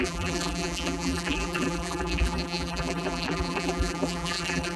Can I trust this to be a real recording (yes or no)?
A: no